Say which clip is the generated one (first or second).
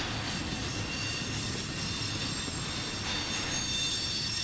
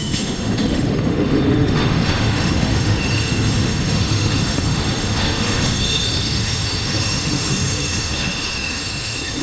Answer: second